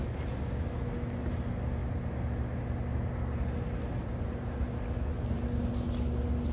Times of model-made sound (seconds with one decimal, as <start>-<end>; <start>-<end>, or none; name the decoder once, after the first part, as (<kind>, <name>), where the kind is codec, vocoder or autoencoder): none